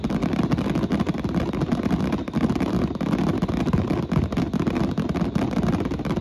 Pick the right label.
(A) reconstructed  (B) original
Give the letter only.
B